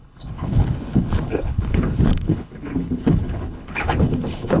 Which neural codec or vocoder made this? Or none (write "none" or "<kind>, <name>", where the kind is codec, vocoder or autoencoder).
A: codec, HILCodec